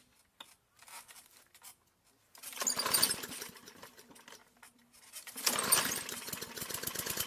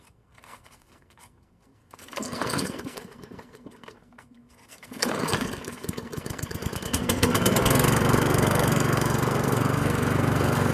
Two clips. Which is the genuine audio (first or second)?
first